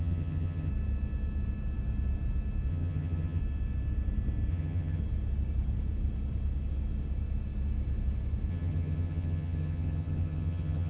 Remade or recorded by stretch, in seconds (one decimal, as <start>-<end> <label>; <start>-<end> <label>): 0.0-0.7 remade; 0.7-2.7 recorded; 2.7-3.4 remade; 3.4-4.5 recorded; 4.5-5.0 remade; 5.0-8.5 recorded; 8.5-10.9 remade

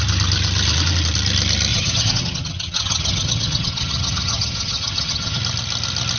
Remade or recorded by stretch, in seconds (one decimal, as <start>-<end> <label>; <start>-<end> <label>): 0.0-1.7 recorded; 1.7-5.4 remade; 5.4-6.2 recorded

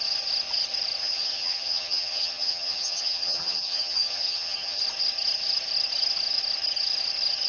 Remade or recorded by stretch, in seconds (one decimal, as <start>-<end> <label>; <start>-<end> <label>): 0.0-1.0 recorded; 1.0-4.8 remade; 4.8-7.5 recorded

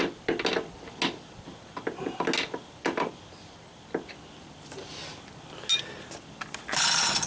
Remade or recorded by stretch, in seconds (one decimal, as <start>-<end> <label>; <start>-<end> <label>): 0.0-7.3 recorded

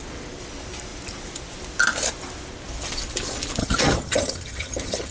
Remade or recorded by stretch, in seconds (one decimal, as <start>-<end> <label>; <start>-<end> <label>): 0.0-3.6 recorded; 3.6-5.1 remade

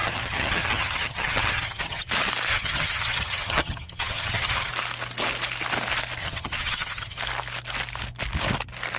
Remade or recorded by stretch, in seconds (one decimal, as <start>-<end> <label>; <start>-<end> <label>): 0.0-2.1 remade; 2.1-2.5 recorded; 2.5-4.7 remade; 4.7-6.2 recorded; 6.2-7.2 remade; 7.2-9.0 recorded

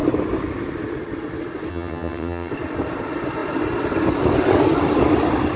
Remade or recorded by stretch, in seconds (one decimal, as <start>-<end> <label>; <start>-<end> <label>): 0.0-1.7 recorded; 1.7-2.5 remade; 2.5-5.6 recorded